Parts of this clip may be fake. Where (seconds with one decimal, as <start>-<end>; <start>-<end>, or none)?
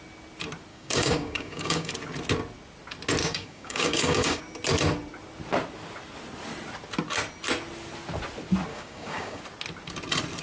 0.7-1.9; 3.2-4.4; 8.7-9.4